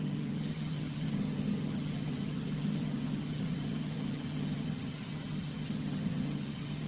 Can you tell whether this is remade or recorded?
remade